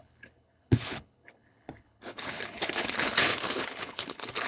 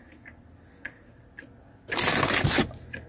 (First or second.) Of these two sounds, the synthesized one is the first